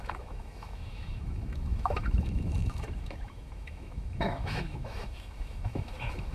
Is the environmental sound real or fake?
fake